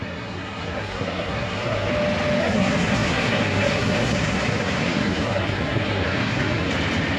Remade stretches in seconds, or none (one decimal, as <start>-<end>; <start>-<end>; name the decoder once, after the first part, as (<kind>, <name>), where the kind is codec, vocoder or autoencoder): 0.0-1.9 (codec, SNAC); 2.4-6.7

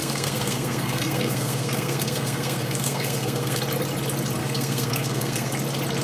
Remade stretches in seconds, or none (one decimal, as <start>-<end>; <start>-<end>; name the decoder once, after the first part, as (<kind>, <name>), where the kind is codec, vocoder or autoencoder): 0.0-3.6 (codec, SNAC); 4.4-5.5

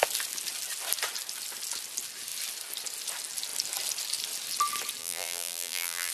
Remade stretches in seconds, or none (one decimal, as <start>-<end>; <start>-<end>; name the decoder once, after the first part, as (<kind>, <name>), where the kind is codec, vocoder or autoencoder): 5.0-6.1 (vocoder, BigVGAN v2)

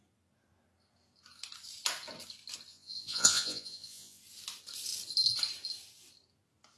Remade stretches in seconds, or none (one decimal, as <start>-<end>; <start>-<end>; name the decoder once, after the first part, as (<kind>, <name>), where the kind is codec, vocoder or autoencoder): 2.7-4.2 (vocoder, Vocos)

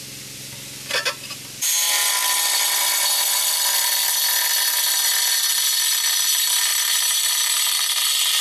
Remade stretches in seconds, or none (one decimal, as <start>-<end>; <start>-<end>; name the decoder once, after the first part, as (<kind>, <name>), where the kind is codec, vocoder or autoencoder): 6.7-7.3 (vocoder, BigVGAN v2)

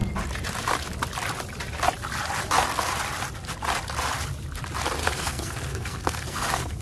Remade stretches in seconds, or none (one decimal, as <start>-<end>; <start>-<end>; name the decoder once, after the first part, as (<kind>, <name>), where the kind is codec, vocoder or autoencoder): 5.0-6.8 (codec, SNAC)

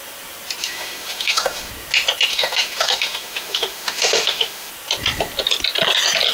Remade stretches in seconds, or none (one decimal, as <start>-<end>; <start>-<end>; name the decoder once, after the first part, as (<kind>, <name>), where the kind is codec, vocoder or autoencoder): 0.6-1.7 (autoencoder, DAC-VAE); 2.3-4.7